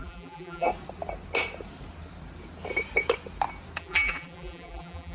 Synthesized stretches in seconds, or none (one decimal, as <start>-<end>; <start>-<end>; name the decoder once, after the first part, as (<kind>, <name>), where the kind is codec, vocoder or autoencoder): 0.0-0.7 (vocoder, BigVGAN v2); 3.8-5.1